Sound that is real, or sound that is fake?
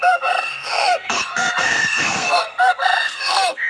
fake